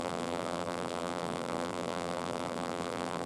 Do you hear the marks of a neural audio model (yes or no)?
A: yes